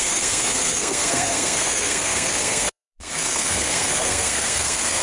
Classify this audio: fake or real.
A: fake